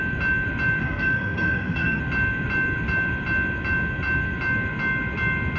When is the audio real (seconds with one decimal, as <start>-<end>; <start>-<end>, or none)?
0.0-0.8; 2.0-5.6

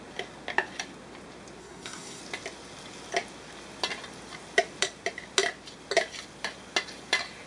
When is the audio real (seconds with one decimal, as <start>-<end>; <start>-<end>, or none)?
0.0-1.6; 2.2-7.5